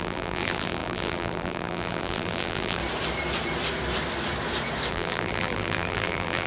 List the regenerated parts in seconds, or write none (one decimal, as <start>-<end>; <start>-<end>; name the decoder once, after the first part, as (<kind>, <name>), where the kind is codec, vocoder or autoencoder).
0.0-2.8 (vocoder, BigVGAN v2); 4.9-6.5